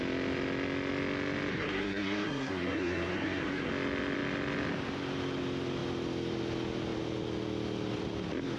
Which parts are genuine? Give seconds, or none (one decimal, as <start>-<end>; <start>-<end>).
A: 0.0-1.5; 3.7-8.6